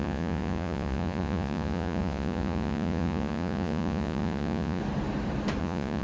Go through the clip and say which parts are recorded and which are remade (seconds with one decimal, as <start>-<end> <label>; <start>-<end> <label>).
0.0-4.8 remade; 4.8-5.6 recorded; 5.6-6.0 remade